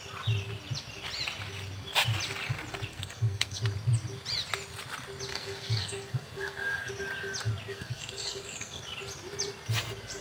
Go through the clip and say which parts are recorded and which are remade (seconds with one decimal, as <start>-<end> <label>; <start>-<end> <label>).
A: 0.0-2.9 recorded; 2.9-3.6 remade; 3.6-5.3 recorded; 5.3-6.9 remade; 6.9-7.7 recorded; 7.7-8.8 remade; 8.8-10.2 recorded